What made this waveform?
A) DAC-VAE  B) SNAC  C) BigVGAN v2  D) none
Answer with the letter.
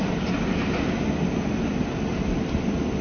D